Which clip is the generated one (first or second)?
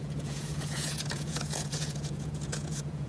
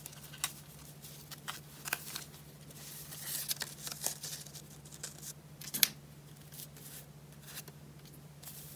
first